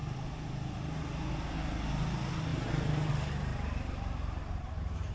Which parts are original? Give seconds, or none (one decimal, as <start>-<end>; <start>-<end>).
0.0-2.5; 3.1-3.5